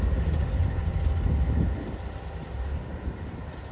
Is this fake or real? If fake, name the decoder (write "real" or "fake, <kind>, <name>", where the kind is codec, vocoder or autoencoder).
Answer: real